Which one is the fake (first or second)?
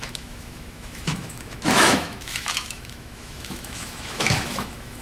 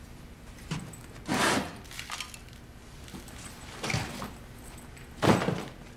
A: first